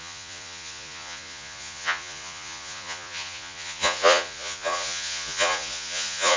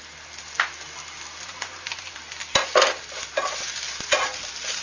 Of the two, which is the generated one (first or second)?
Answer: first